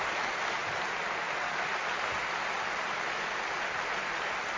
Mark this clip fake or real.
real